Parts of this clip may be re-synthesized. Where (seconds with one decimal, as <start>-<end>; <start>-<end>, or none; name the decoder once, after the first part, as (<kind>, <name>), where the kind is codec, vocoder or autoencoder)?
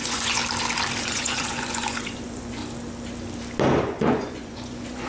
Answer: 0.0-0.4 (vocoder, Vocos); 1.0-2.6; 3.8-5.1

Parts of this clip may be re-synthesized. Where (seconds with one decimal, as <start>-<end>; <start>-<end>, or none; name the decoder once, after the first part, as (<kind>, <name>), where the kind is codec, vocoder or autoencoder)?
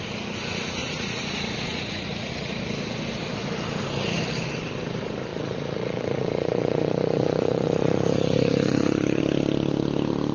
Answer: 0.8-2.3 (vocoder, Vocos); 5.3-9.2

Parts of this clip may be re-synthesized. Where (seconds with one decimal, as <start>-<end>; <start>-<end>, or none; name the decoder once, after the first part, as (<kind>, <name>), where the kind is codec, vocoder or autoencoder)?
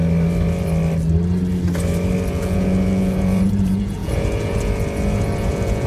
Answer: 2.3-5.9 (vocoder, Vocos)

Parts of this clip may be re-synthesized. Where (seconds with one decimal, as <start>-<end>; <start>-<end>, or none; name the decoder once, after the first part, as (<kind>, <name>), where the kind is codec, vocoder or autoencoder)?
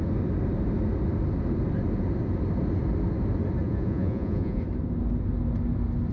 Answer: 3.6-4.6 (vocoder, Vocos)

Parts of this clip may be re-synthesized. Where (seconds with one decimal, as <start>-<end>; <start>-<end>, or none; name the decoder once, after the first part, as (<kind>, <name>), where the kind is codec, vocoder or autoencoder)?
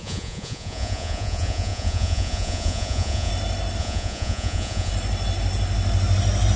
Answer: 0.0-3.3 (vocoder, Vocos); 3.8-4.9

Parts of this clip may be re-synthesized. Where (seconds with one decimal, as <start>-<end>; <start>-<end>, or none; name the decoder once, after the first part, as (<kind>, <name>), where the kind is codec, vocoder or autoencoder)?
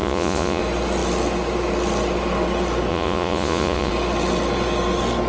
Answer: 0.0-0.6 (vocoder, Vocos); 2.9-3.9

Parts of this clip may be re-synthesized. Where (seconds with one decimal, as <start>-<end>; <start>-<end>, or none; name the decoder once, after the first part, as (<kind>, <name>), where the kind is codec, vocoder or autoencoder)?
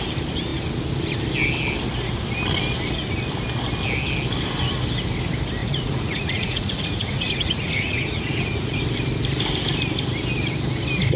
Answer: 5.6-8.8 (vocoder, Vocos)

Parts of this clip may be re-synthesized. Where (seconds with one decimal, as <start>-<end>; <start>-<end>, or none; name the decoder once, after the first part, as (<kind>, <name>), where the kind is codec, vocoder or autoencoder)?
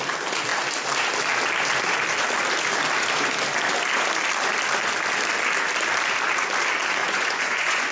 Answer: 7.0-7.9 (vocoder, Vocos)